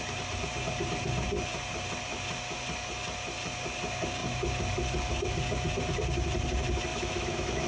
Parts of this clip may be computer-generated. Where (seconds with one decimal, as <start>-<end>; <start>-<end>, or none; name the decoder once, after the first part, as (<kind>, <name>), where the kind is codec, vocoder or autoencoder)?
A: 6.9-7.7 (autoencoder, DAC-VAE)